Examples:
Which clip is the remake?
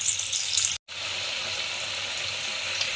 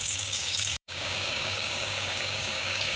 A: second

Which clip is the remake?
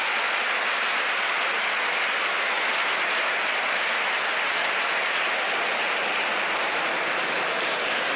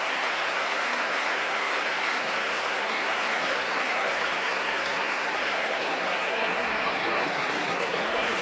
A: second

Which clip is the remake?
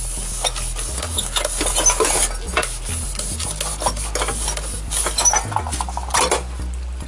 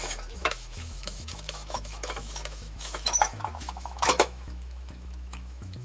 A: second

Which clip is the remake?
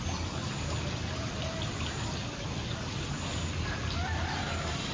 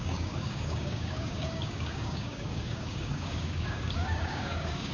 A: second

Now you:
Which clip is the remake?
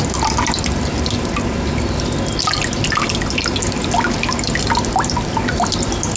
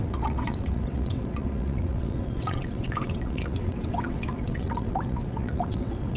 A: second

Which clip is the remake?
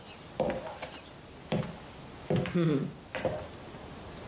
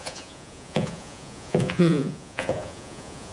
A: second